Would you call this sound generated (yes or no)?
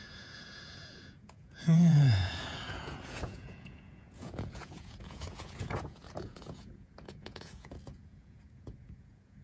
yes